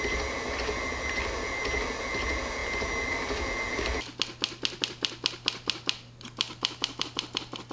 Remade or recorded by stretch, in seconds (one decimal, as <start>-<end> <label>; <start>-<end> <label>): 0.0-7.7 recorded